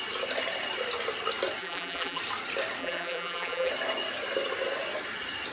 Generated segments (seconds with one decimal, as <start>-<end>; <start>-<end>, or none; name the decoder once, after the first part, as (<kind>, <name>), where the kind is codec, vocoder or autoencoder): 1.6-2.2 (vocoder, BigVGAN v2); 2.8-3.7